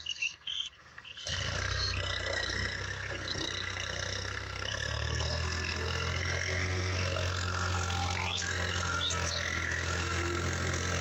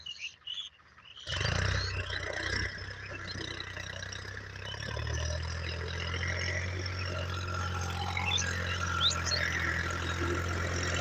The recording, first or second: second